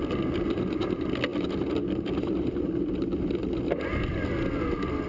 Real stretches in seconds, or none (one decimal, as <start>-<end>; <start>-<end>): 0.0-5.1